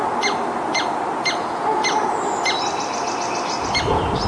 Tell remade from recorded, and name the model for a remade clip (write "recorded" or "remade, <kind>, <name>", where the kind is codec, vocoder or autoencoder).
recorded